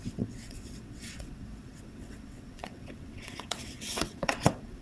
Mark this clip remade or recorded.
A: remade